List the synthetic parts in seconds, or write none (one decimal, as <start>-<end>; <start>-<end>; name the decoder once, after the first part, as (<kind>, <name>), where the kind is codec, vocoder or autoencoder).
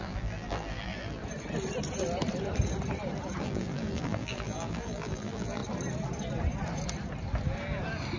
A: 0.0-1.2 (vocoder, BigVGAN v2); 3.4-5.6